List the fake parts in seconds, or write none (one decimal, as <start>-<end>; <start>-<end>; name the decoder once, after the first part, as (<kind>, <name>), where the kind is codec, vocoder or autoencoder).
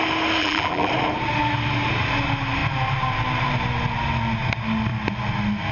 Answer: 0.4-0.9 (vocoder, BigVGAN v2)